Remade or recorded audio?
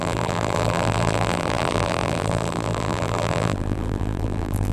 remade